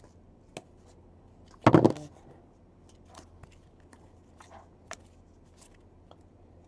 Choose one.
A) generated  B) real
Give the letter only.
B